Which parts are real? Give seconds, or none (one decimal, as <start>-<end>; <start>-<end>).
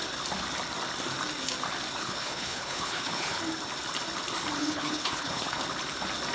0.0-2.0; 3.4-4.6; 5.6-6.3